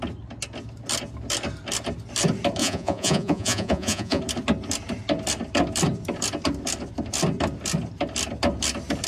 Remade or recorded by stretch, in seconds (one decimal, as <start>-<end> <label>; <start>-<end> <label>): 0.0-2.6 recorded; 2.6-4.2 remade; 4.2-9.1 recorded

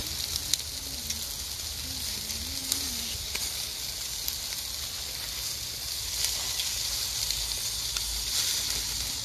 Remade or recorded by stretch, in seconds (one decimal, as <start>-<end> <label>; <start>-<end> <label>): 0.0-9.2 recorded

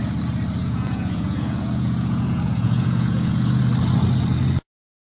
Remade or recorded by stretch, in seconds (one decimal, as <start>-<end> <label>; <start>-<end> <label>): 0.0-0.6 recorded; 0.6-3.6 remade; 3.6-5.0 recorded

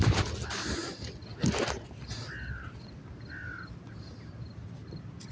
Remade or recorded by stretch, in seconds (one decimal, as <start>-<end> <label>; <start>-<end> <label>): 0.0-5.3 recorded